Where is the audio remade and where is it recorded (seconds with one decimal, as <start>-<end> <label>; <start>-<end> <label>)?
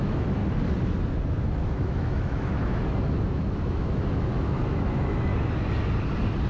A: 0.0-0.4 remade; 0.4-1.2 recorded; 1.2-5.3 remade; 5.3-6.5 recorded